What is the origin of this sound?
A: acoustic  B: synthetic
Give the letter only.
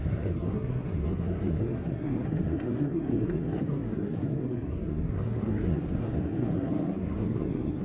B